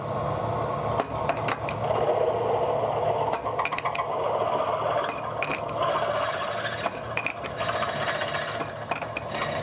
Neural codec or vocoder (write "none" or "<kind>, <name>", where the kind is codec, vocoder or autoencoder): none